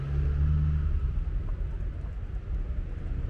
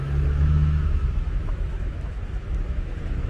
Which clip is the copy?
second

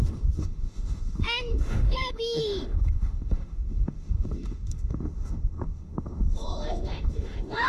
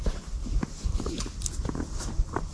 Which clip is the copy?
first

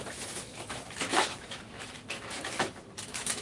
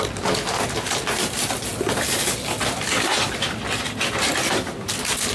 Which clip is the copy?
first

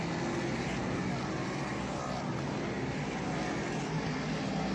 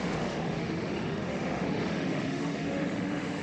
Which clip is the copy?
second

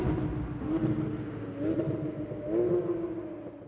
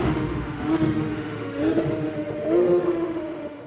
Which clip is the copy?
second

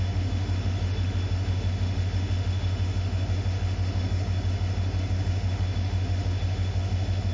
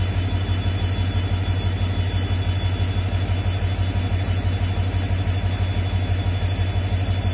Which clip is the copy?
first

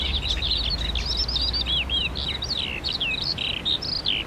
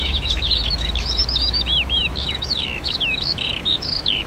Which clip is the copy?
second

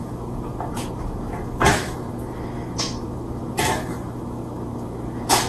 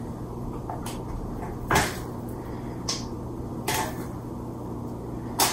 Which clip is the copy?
first